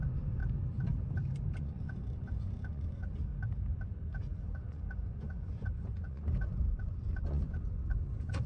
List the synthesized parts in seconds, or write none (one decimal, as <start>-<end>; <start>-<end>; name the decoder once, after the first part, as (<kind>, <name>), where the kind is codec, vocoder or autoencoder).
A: 0.0-0.4 (vocoder, Vocos); 1.6-3.3; 3.9-8.5